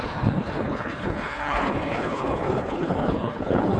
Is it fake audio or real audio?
fake